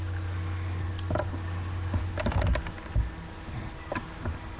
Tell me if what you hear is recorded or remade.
recorded